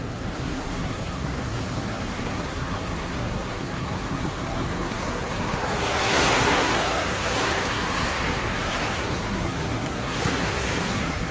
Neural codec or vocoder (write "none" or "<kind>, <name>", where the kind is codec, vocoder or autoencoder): codec, SNAC